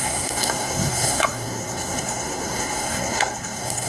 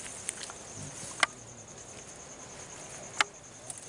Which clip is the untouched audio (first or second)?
second